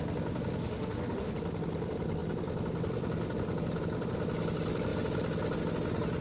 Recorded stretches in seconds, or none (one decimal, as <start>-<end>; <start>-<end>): 0.0-0.6; 1.3-6.2